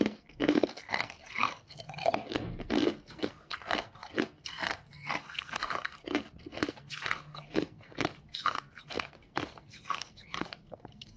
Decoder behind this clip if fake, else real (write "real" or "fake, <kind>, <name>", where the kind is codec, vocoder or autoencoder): fake, codec, SNAC